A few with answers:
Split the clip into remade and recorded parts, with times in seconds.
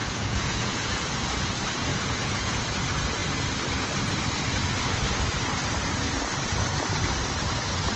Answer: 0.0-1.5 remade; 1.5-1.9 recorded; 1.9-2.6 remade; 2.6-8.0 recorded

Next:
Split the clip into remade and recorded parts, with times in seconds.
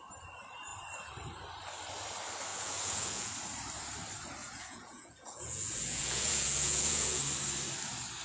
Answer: 0.0-2.5 recorded; 2.5-3.3 remade; 3.3-4.4 recorded; 4.4-7.2 remade; 7.2-8.2 recorded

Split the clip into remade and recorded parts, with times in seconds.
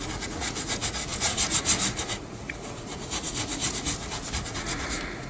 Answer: 0.0-5.3 remade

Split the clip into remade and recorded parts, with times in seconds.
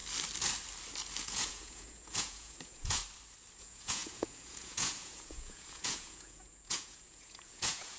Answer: 0.0-1.2 recorded; 1.2-3.0 remade; 3.0-3.6 recorded; 3.6-8.0 remade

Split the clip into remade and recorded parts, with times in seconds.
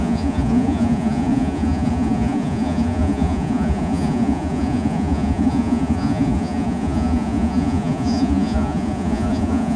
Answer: 0.0-9.8 remade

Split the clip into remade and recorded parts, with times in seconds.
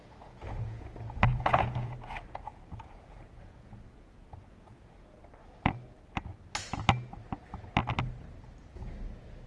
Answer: 0.0-5.2 remade; 5.2-9.5 recorded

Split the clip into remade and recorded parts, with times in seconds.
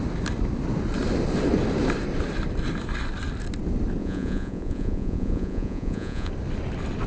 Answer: 0.0-4.0 recorded; 4.0-6.3 remade; 6.3-7.1 recorded